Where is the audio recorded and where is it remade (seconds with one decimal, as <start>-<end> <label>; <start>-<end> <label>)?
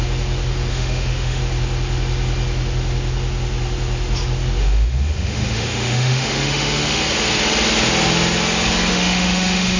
0.0-0.7 recorded; 0.7-1.4 remade; 1.4-4.6 recorded; 4.6-7.0 remade; 7.0-8.9 recorded; 8.9-9.8 remade